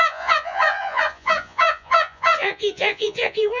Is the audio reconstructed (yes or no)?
yes